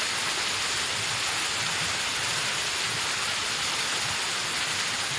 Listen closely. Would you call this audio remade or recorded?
recorded